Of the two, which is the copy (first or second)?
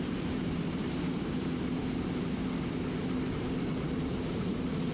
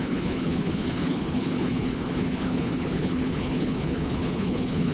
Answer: second